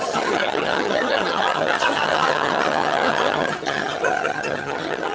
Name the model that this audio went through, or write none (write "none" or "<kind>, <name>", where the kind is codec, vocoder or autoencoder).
vocoder, HiFi-GAN